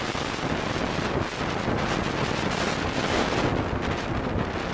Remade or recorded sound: recorded